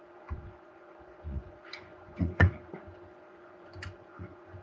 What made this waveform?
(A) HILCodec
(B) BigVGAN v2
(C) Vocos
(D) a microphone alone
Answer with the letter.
C